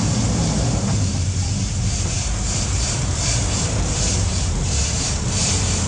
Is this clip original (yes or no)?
no